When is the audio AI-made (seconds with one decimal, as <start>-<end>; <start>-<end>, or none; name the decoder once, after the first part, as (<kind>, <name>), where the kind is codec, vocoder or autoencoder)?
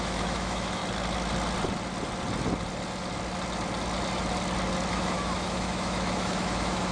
0.0-0.8 (autoencoder, DAC-VAE); 4.9-6.9